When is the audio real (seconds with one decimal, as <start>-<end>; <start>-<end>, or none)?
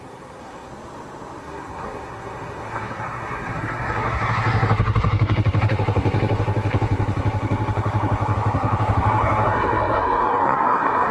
0.7-1.4